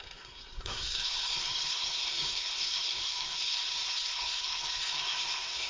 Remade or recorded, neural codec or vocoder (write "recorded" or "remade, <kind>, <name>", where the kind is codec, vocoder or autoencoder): remade, codec, SNAC